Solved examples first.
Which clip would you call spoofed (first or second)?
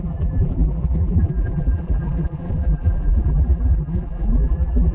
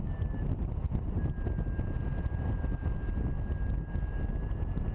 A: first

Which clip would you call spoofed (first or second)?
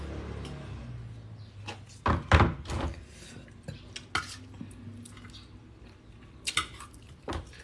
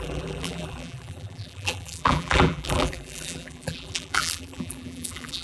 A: second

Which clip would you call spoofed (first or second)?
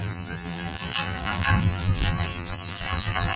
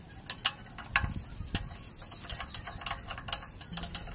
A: first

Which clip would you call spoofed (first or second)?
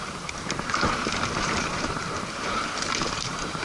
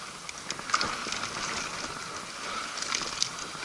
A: first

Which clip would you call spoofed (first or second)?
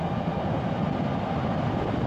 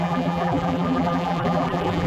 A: second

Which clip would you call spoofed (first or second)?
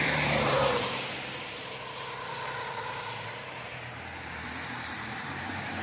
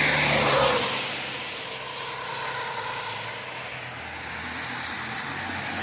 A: first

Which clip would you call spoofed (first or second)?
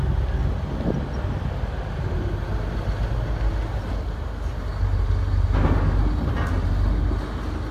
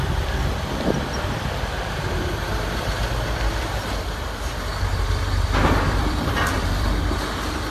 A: second